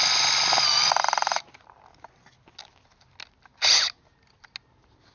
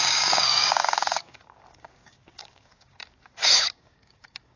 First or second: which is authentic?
first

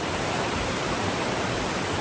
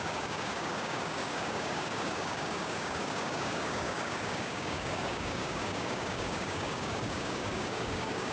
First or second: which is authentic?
first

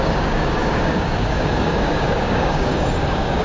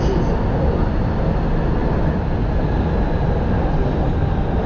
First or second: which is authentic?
second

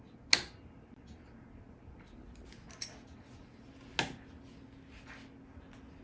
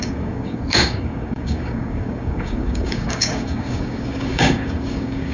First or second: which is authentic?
first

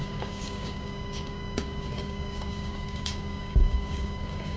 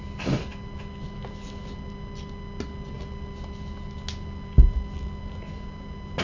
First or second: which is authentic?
second